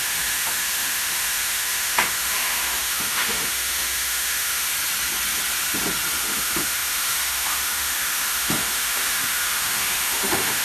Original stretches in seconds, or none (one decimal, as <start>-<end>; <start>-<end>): 4.7-6.2